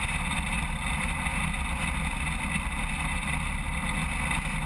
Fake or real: real